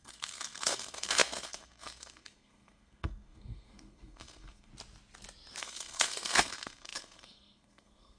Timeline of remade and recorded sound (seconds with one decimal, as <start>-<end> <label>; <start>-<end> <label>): 0.0-4.7 remade; 4.7-5.6 recorded; 5.6-8.2 remade